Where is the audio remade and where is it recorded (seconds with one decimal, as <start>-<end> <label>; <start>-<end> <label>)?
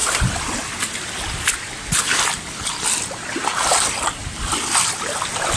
0.0-5.6 recorded